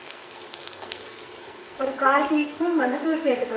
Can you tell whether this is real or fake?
fake